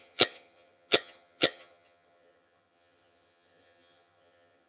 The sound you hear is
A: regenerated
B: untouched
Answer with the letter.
A